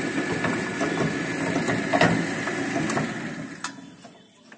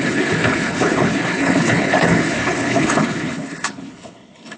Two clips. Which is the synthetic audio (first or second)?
second